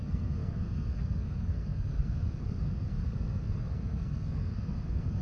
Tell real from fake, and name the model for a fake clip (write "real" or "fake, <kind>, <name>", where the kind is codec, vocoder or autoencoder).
fake, codec, SNAC